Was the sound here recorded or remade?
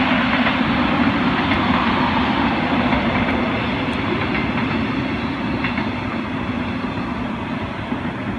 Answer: recorded